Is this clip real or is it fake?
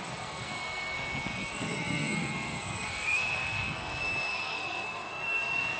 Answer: fake